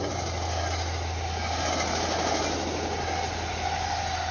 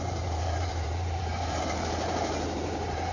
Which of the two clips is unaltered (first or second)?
first